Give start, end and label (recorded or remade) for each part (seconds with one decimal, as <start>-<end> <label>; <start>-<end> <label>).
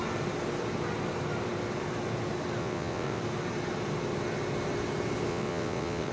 0.0-2.6 recorded; 2.6-3.2 remade; 3.2-5.3 recorded; 5.3-6.1 remade